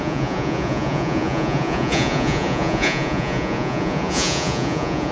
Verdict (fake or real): fake